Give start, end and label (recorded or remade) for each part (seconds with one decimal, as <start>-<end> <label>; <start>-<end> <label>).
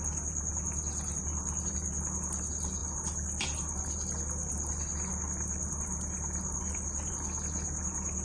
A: 0.0-8.2 recorded